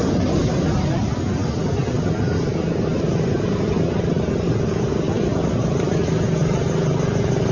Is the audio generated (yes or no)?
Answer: no